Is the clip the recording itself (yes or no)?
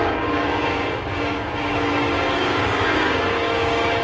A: no